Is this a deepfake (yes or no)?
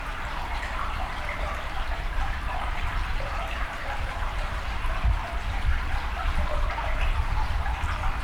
yes